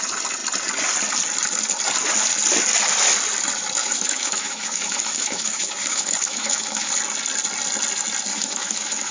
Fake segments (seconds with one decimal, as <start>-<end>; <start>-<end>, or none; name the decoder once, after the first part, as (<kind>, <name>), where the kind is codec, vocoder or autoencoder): 3.8-6.9 (autoencoder, DAC-VAE); 8.3-9.1